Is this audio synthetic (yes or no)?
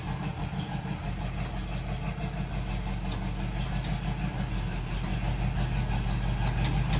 no